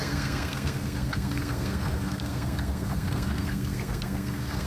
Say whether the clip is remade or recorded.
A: remade